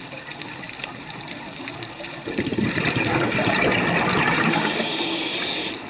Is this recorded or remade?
remade